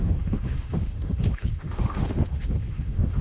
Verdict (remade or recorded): remade